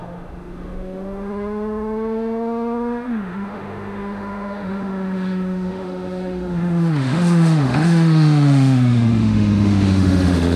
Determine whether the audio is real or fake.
fake